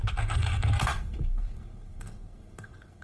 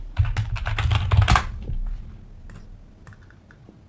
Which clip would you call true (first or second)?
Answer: second